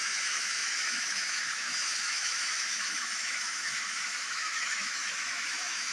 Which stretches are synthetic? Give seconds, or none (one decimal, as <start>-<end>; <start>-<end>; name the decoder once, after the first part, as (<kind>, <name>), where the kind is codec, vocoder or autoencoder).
0.0-5.9 (autoencoder, DAC-VAE)